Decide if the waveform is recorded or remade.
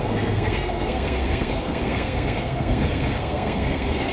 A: remade